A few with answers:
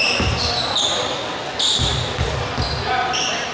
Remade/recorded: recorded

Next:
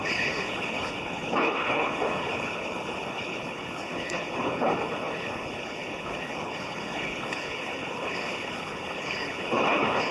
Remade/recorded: remade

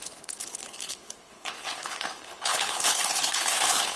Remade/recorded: remade